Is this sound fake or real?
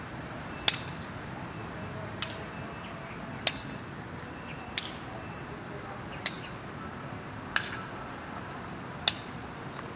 real